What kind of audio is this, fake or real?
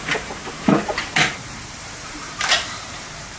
fake